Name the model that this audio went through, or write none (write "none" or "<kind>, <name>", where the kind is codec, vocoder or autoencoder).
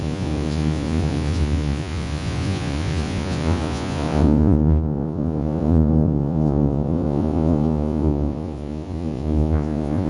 vocoder, Vocos